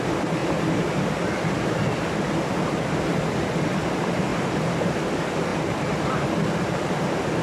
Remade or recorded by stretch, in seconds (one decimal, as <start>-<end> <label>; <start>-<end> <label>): 0.0-4.3 recorded; 4.3-4.9 remade; 4.9-7.4 recorded

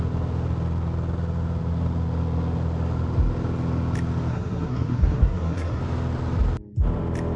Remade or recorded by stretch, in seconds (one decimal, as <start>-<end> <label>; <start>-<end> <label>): 0.0-4.3 recorded; 4.3-5.8 remade; 5.8-7.4 recorded

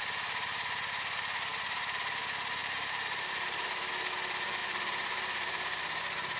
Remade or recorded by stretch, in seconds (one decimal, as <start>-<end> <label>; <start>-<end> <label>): 0.0-1.5 recorded; 1.5-2.1 remade; 2.1-2.6 recorded; 2.6-3.9 remade; 3.9-4.6 recorded; 4.6-6.0 remade; 6.0-6.4 recorded

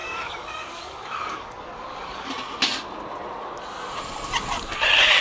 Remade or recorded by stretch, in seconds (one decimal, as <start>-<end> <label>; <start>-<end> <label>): 0.0-2.3 remade; 2.3-5.2 recorded

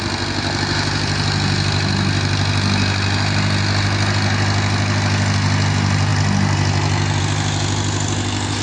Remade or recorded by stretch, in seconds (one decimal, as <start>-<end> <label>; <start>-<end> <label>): 0.0-8.6 recorded

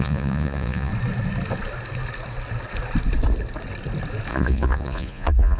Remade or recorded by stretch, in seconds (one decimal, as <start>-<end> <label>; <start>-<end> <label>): 0.0-0.9 remade; 0.9-4.3 recorded; 4.3-5.6 remade